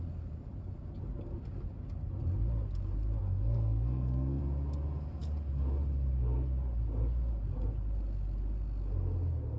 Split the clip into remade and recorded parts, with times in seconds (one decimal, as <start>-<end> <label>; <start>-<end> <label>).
0.0-3.2 recorded; 3.2-4.4 remade; 4.4-9.6 recorded